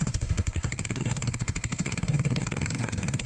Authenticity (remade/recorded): remade